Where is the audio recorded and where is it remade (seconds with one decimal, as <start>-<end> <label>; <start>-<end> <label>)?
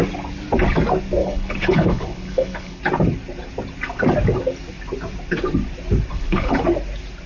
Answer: 0.0-1.2 recorded; 1.2-2.8 remade; 2.8-6.1 recorded; 6.1-6.6 remade; 6.6-7.3 recorded